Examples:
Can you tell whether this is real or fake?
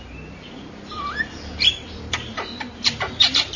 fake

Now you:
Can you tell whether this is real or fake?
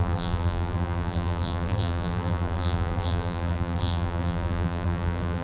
fake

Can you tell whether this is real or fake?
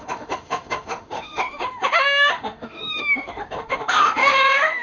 fake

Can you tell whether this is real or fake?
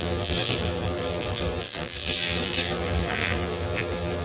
fake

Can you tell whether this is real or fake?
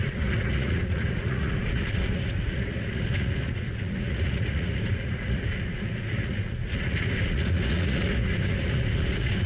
fake